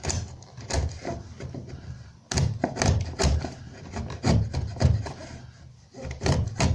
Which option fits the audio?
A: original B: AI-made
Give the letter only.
A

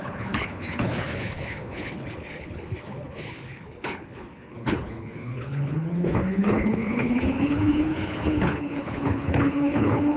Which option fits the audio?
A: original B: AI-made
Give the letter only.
B